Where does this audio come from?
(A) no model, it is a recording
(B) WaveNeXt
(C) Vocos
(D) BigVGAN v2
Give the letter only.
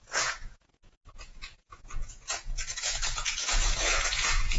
C